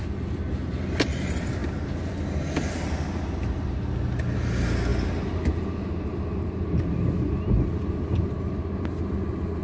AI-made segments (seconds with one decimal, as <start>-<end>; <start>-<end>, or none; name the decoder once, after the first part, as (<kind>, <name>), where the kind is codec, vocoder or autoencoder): none